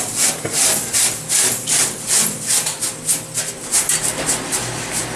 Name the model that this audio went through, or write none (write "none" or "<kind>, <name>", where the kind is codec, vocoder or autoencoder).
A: none